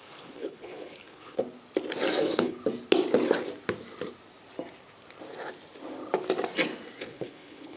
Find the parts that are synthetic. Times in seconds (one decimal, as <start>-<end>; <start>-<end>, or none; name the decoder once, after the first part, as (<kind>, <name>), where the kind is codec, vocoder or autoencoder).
0.0-1.4 (codec, HILCodec); 2.2-2.6; 7.0-7.8